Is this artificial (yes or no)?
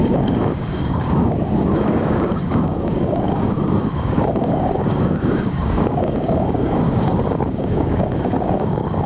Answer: yes